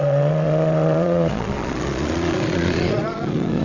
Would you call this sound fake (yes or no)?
yes